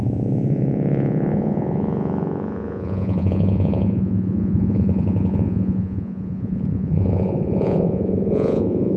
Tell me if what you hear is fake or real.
fake